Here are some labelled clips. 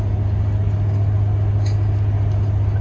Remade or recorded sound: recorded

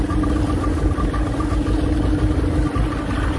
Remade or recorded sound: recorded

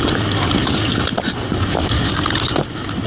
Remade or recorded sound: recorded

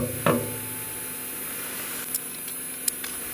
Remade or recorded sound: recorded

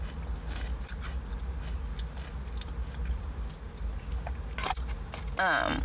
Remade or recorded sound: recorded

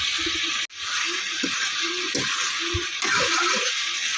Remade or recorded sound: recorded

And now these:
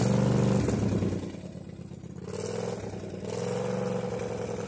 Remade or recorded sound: recorded